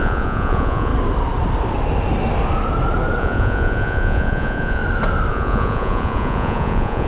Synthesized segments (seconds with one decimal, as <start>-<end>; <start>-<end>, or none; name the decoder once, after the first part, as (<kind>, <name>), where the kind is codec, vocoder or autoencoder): 0.0-0.9 (vocoder, Vocos); 3.2-4.8; 5.3-7.1